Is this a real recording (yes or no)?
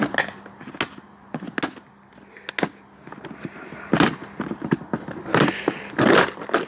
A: yes